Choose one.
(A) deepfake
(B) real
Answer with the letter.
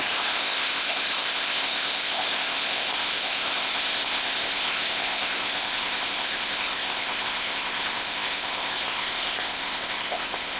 A